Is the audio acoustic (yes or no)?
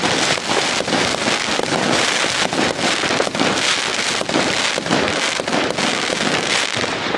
yes